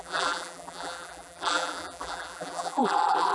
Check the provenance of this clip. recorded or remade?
remade